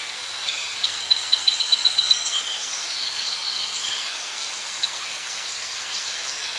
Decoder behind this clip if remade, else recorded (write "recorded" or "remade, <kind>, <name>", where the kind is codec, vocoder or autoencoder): remade, codec, SNAC